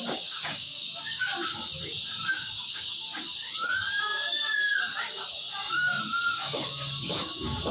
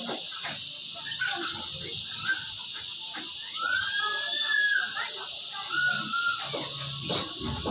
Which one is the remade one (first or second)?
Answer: first